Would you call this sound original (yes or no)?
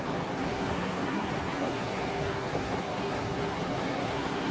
no